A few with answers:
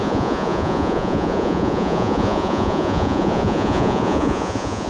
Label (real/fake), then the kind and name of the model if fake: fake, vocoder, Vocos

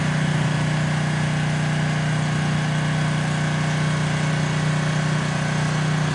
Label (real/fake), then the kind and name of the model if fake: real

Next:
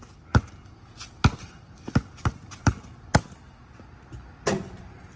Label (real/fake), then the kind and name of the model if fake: real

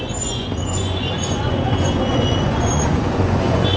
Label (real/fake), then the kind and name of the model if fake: fake, vocoder, Vocos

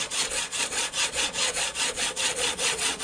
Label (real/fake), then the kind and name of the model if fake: fake, vocoder, Vocos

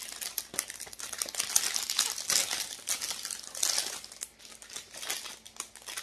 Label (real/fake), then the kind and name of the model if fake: real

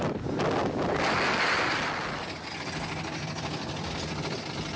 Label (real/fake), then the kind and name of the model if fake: real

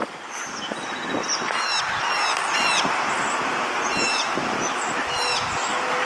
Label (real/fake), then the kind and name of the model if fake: real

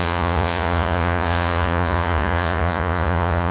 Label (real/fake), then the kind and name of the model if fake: fake, vocoder, Vocos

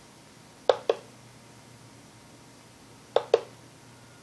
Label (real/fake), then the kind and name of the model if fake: real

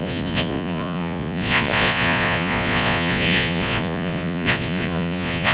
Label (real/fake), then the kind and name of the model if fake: fake, vocoder, Vocos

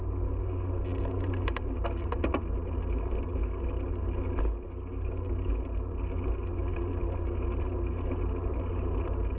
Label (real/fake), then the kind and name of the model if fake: real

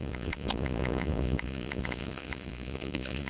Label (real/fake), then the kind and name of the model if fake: fake, vocoder, Vocos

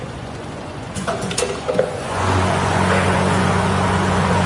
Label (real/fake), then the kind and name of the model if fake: fake, vocoder, Vocos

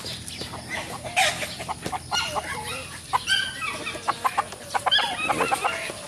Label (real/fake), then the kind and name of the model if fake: real